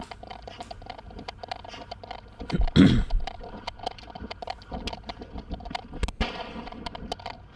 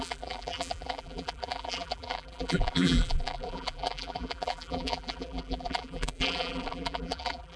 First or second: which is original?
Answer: first